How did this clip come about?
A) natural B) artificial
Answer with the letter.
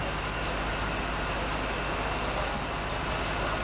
A